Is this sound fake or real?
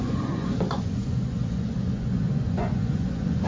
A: fake